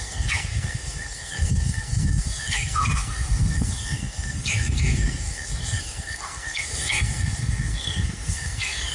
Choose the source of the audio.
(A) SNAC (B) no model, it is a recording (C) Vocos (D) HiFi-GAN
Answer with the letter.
A